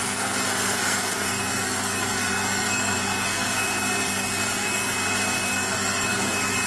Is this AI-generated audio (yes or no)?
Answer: yes